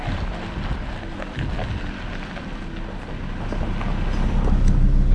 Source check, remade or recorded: recorded